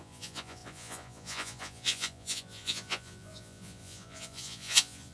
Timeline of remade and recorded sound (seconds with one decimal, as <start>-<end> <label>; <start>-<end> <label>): 0.0-5.1 remade